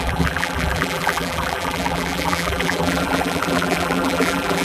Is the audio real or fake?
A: fake